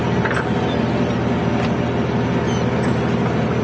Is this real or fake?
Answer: real